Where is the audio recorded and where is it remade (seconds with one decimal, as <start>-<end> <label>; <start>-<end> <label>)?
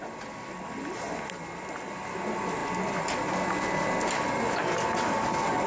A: 0.0-5.7 recorded